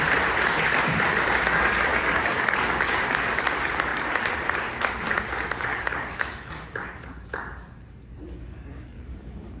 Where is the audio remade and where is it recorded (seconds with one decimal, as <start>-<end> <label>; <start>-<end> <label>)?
0.0-1.9 recorded; 1.9-3.4 remade; 3.4-5.7 recorded; 5.7-9.6 remade